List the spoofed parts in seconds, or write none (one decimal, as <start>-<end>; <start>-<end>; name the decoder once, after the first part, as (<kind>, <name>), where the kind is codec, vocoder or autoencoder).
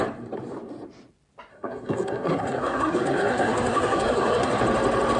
1.5-4.6 (codec, SNAC)